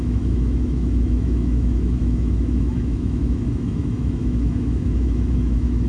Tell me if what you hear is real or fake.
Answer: fake